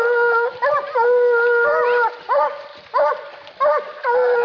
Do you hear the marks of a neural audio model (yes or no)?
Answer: no